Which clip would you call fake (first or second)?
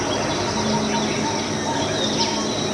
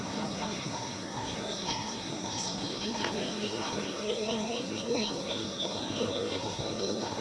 second